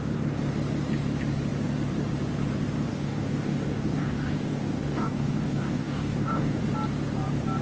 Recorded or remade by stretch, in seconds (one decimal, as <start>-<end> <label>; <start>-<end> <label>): 0.0-2.9 recorded; 2.9-6.6 remade; 6.6-7.6 recorded